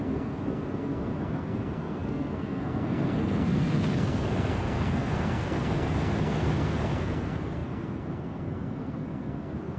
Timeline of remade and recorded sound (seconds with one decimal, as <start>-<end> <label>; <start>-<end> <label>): 0.0-9.8 remade